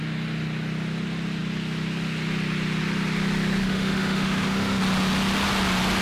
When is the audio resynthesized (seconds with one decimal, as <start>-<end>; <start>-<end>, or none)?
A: 3.6-4.8